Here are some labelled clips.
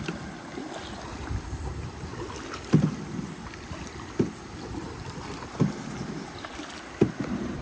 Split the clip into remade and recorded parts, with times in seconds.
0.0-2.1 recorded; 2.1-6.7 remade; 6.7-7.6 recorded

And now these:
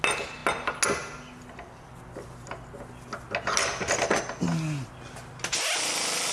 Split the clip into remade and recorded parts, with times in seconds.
0.0-6.3 recorded

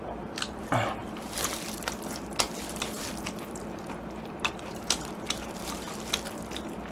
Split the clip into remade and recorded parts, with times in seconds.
0.0-6.9 remade

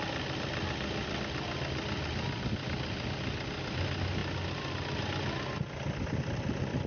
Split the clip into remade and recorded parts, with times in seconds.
0.0-6.9 recorded

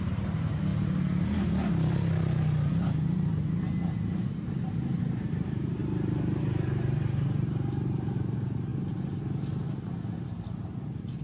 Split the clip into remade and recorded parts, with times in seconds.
0.0-0.7 remade; 0.7-4.2 recorded; 4.2-5.8 remade; 5.8-6.4 recorded; 6.4-8.7 remade; 8.7-11.2 recorded

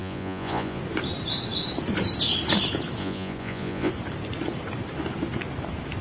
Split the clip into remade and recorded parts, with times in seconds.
0.0-0.8 remade; 0.8-3.0 recorded; 3.0-3.9 remade; 3.9-6.0 recorded

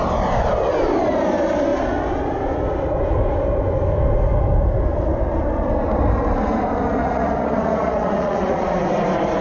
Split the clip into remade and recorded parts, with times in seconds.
0.0-7.0 recorded; 7.0-8.8 remade; 8.8-9.4 recorded